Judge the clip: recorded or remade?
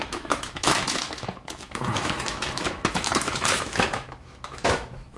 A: remade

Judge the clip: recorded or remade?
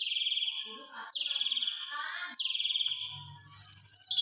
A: recorded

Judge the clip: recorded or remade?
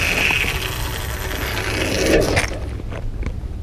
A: recorded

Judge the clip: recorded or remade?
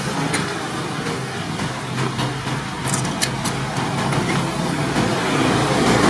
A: recorded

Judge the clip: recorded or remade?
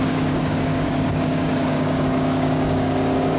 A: remade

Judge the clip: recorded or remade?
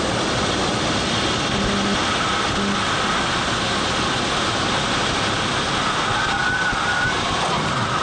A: recorded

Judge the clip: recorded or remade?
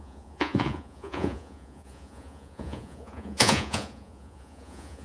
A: remade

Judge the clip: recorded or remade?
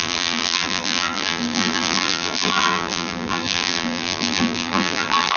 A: remade